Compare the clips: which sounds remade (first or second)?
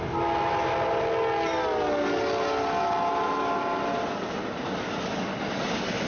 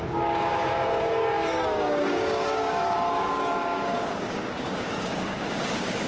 second